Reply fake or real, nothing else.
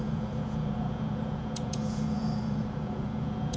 fake